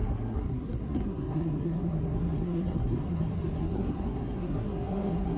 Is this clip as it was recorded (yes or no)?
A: no